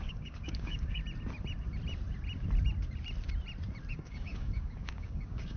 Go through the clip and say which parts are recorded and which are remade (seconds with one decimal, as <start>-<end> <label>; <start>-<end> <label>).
0.0-1.0 remade; 1.0-3.9 recorded; 3.9-5.6 remade